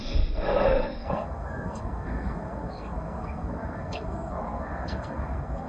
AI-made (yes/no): yes